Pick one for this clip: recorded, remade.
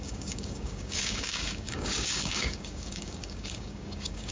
remade